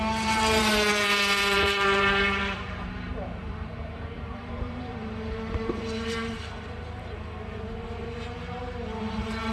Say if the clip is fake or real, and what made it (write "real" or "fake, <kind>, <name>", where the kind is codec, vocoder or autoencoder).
fake, vocoder, BigVGAN v2